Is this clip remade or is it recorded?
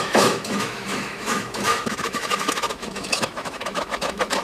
remade